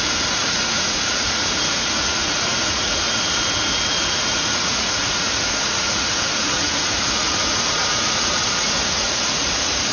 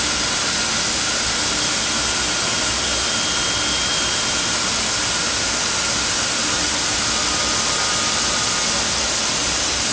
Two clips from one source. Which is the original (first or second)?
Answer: second